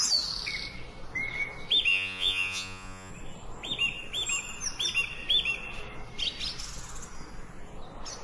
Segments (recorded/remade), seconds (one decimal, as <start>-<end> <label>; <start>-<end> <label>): 0.0-1.9 recorded; 1.9-3.1 remade; 3.1-8.2 recorded